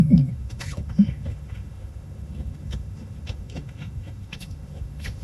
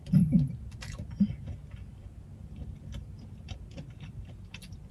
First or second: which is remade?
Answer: first